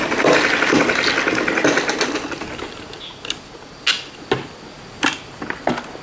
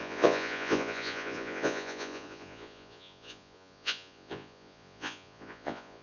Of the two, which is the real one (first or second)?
first